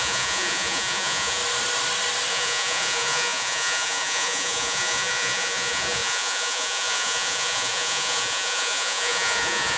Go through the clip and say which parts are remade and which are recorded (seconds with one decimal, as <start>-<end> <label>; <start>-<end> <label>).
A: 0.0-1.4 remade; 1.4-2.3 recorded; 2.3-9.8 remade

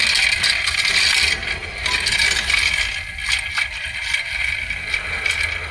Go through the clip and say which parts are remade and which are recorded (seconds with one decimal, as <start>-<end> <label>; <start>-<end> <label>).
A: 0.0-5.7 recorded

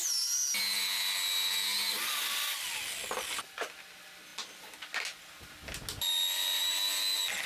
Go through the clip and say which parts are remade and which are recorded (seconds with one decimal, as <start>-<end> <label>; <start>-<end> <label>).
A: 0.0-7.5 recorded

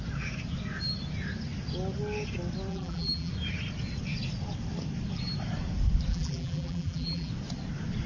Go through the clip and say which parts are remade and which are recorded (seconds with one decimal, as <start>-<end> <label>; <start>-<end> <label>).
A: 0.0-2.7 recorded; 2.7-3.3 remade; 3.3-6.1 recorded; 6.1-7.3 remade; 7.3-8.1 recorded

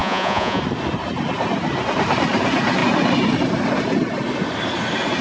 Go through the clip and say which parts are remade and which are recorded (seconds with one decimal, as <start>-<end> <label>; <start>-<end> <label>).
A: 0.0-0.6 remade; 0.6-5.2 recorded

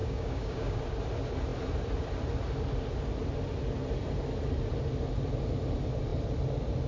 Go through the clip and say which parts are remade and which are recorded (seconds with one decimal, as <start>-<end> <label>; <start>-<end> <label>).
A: 0.0-0.8 remade; 0.8-6.9 recorded

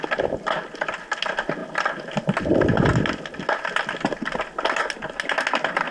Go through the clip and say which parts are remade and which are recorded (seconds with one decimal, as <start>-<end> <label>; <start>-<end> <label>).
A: 0.0-5.9 recorded